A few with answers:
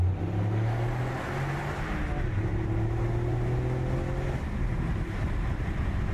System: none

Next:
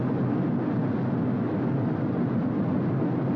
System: none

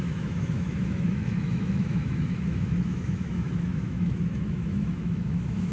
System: autoencoder, DAC-VAE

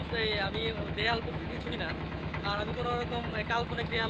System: autoencoder, DAC-VAE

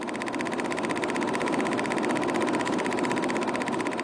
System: none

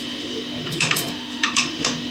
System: autoencoder, DAC-VAE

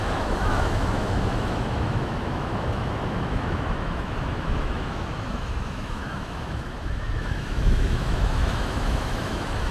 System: autoencoder, DAC-VAE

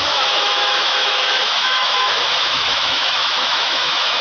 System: autoencoder, DAC-VAE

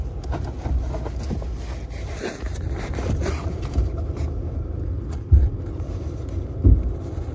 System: none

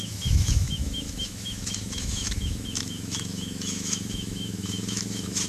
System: autoencoder, DAC-VAE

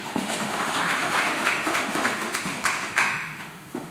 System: autoencoder, DAC-VAE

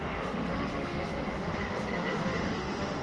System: autoencoder, DAC-VAE